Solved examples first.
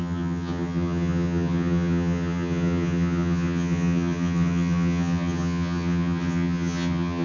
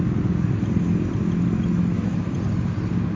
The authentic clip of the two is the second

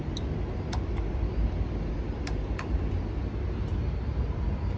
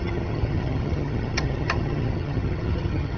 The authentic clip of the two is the first